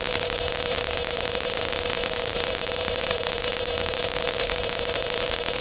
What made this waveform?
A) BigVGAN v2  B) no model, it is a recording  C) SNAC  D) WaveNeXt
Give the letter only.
A